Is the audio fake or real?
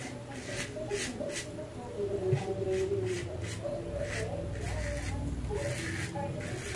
real